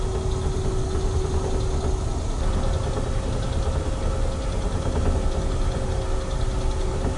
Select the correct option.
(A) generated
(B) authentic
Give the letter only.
B